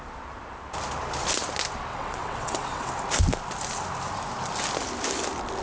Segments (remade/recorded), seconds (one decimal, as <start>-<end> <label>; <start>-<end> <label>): 0.0-1.9 recorded; 1.9-2.9 remade; 2.9-5.6 recorded